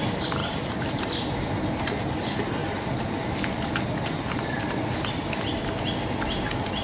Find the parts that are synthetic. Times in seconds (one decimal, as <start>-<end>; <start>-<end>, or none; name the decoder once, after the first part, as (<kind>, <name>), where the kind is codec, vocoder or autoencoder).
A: 0.4-1.1 (vocoder, BigVGAN v2); 2.6-4.8